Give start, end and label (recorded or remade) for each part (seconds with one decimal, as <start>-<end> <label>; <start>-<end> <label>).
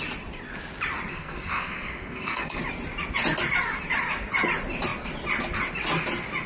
0.0-1.1 recorded; 1.1-2.6 remade; 2.6-6.5 recorded